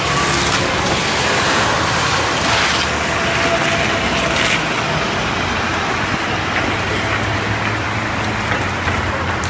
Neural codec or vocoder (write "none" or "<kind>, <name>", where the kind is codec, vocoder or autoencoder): none